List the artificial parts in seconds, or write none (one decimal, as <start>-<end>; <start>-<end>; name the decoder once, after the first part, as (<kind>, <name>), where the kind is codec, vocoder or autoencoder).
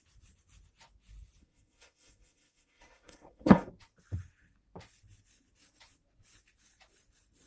1.4-3.7 (codec, SNAC)